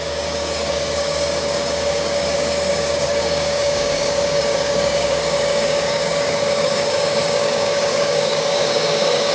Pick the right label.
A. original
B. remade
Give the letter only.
B